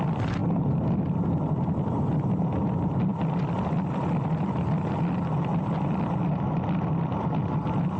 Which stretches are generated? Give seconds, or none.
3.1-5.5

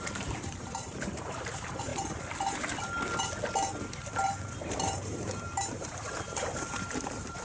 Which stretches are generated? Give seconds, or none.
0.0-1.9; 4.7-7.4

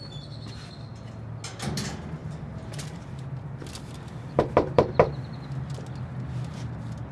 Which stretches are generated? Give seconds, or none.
2.2-5.1

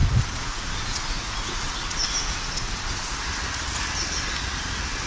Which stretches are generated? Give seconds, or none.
0.0-3.1

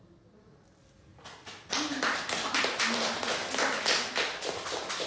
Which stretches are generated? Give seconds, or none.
none